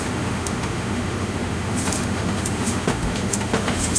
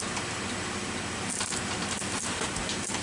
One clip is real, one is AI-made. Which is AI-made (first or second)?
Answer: first